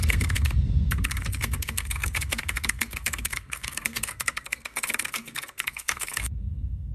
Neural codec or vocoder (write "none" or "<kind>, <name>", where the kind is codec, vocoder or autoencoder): codec, SNAC